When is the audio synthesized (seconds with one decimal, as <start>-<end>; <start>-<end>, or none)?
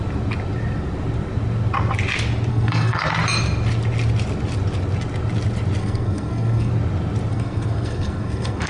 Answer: 2.5-3.1; 5.8-6.7; 7.3-8.7